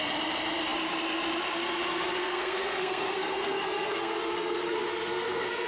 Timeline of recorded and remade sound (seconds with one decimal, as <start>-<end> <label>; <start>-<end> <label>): 0.0-2.2 recorded; 2.2-5.7 remade